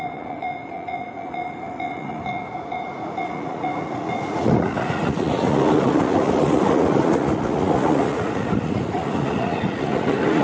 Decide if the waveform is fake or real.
fake